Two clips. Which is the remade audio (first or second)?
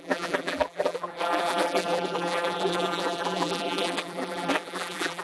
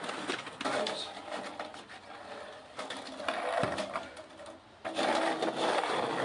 first